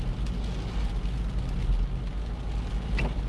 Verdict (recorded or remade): recorded